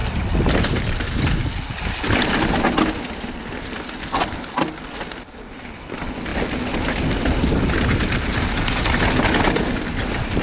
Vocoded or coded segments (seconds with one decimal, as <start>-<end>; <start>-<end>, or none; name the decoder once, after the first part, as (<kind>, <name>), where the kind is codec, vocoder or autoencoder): none